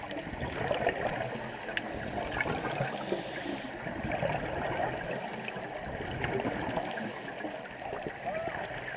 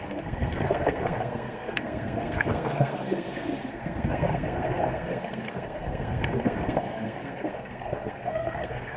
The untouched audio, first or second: first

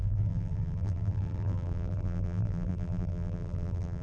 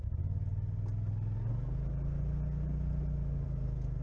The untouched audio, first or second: second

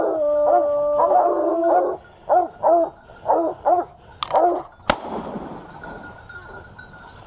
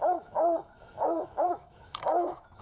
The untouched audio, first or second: first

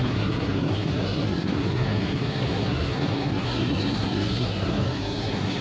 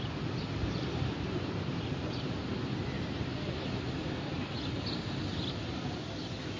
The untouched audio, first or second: second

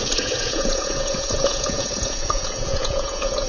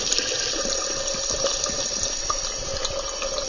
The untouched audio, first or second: second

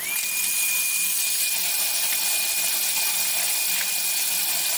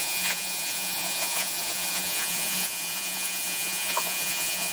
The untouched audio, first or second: first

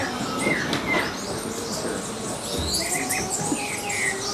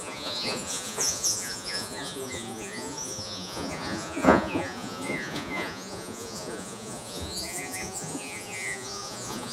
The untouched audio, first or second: first